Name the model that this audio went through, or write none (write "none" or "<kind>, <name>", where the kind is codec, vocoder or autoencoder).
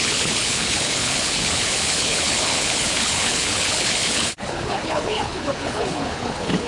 codec, HILCodec